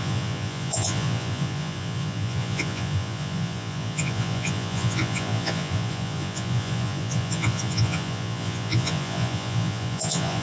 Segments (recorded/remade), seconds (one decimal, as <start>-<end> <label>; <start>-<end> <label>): 0.0-10.4 remade